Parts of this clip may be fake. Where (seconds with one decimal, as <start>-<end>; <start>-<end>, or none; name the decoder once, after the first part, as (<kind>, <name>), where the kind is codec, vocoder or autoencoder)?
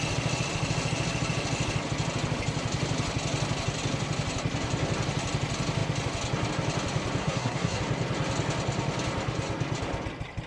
7.2-7.8 (codec, SNAC)